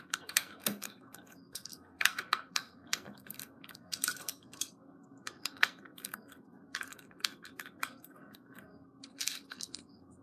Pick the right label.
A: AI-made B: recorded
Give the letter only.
A